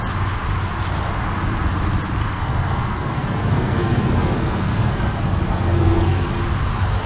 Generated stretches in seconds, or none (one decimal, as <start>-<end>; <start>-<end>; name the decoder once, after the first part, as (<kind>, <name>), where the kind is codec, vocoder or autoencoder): 2.2-6.4 (codec, SNAC)